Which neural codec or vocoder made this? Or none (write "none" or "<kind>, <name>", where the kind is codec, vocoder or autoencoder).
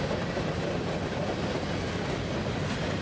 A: none